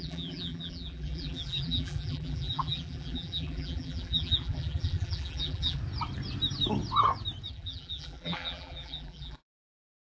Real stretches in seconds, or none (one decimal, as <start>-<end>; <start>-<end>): 5.8-7.5